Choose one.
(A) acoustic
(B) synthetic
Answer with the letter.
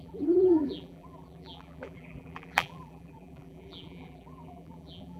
B